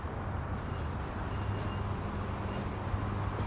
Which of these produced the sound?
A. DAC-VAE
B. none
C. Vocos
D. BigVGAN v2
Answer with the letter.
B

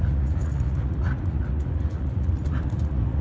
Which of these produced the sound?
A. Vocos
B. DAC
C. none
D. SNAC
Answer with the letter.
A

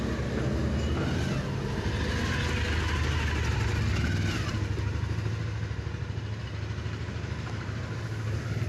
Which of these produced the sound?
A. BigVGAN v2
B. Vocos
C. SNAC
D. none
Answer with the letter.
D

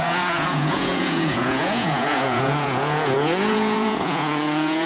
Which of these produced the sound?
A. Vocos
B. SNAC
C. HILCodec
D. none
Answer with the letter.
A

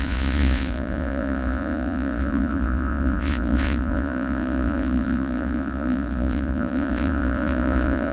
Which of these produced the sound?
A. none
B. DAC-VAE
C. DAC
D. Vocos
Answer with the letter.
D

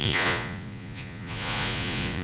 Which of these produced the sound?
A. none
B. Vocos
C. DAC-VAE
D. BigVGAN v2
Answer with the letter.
B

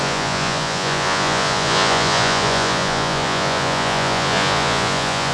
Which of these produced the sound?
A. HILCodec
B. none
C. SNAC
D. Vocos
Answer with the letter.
D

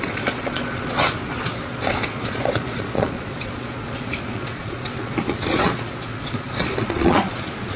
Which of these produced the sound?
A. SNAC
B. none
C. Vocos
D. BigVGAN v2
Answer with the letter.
C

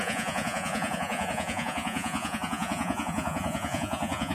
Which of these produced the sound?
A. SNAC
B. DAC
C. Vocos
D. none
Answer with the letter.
C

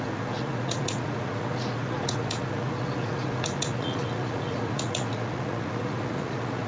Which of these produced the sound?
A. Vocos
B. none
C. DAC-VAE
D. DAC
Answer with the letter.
A